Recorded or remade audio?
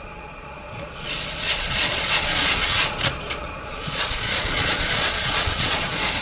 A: remade